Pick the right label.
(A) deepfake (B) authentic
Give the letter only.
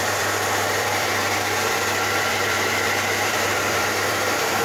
A